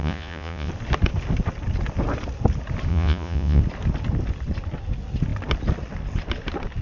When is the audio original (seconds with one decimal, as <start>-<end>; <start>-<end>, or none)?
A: 0.7-2.9; 3.6-6.8